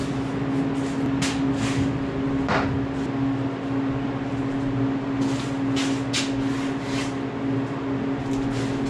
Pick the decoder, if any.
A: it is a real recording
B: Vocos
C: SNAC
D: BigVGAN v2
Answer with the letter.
A